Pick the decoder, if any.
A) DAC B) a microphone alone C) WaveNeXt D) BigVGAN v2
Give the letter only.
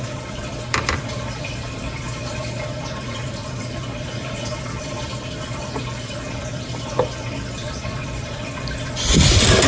D